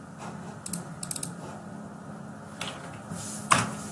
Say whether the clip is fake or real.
real